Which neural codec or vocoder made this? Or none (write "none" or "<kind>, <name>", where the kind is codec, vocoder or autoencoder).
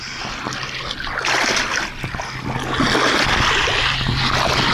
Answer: none